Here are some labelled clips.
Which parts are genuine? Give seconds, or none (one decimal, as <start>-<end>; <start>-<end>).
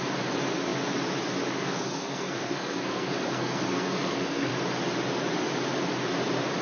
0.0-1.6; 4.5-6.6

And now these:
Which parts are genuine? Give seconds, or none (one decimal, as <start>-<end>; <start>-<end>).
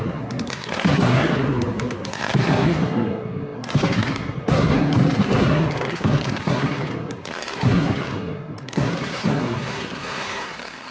none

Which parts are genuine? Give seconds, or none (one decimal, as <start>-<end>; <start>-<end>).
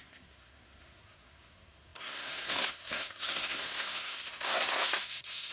none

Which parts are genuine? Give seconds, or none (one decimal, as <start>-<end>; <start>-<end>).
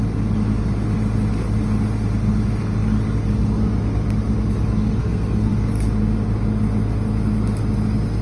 0.0-5.0; 5.5-8.2